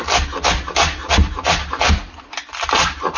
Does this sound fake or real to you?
real